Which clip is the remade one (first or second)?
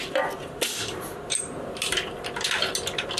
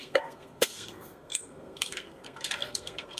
second